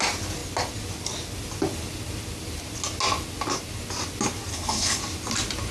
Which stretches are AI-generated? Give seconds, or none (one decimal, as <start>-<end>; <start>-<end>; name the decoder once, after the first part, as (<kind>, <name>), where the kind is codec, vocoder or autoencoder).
4.5-5.0 (codec, HILCodec)